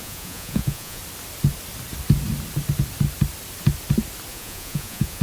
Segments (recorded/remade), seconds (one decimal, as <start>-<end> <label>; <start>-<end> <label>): 0.0-1.0 remade; 1.0-4.3 recorded; 4.3-5.2 remade